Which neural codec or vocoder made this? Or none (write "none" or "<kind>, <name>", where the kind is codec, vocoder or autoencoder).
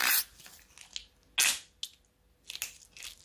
none